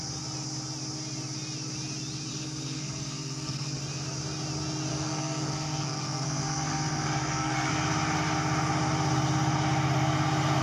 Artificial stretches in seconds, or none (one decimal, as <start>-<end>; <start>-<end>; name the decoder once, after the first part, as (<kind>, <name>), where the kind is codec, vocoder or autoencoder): 2.3-3.8 (codec, SNAC); 4.9-7.7